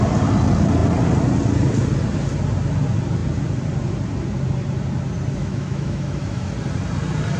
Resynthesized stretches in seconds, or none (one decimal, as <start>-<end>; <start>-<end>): 5.4-6.5